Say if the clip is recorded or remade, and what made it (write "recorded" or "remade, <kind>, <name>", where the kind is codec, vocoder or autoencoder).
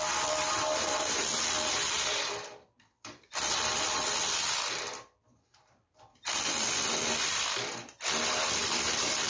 remade, vocoder, BigVGAN v2